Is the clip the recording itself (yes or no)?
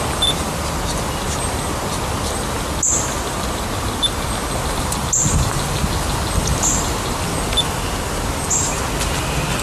yes